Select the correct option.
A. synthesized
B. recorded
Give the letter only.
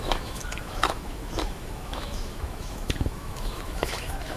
A